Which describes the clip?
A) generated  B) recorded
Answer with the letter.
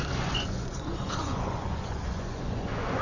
A